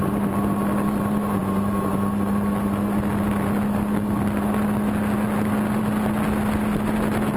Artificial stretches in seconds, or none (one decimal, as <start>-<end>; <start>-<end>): none